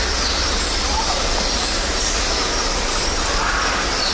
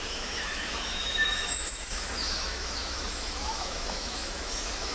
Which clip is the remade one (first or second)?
second